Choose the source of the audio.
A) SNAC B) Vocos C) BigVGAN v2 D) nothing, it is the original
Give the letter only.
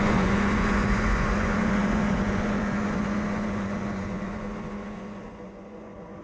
B